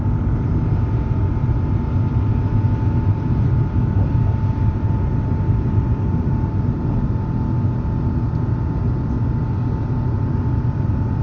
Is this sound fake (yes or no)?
no